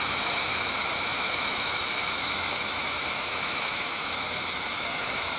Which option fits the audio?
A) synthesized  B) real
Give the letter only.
A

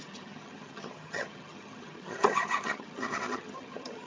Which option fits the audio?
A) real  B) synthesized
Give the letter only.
B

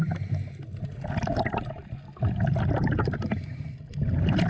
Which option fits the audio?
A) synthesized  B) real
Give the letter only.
B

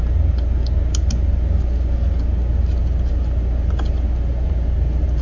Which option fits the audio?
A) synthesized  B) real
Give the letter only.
B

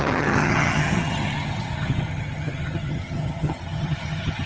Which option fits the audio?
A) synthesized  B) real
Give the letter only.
A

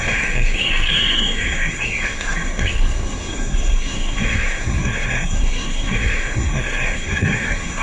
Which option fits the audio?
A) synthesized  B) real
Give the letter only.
A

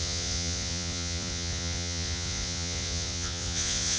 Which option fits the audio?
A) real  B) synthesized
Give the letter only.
B